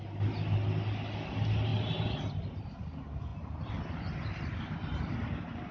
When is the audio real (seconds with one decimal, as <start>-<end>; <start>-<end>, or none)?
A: 0.0-5.7